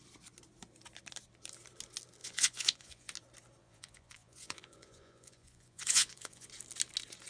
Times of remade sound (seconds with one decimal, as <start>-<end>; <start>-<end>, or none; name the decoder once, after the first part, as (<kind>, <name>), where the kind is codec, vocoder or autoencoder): 2.2-3.1 (vocoder, Vocos); 3.6-6.5